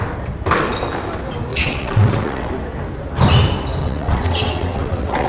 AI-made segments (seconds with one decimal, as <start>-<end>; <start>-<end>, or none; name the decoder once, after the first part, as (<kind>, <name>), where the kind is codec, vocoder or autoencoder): 1.5-2.5 (vocoder, WaveNeXt); 3.8-5.3